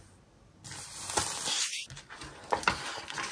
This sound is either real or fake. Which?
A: real